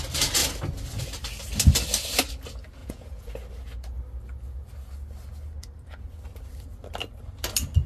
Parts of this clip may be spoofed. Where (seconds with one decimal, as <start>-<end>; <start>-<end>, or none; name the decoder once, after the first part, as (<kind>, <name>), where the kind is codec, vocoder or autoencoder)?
2.8-3.3 (vocoder, Vocos)